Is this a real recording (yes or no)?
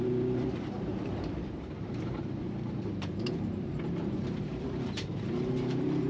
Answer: no